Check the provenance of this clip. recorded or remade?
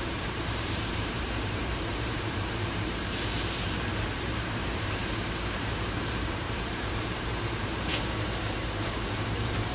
remade